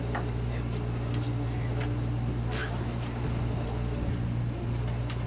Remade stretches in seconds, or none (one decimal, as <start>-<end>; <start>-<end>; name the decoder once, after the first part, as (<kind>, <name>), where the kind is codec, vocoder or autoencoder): none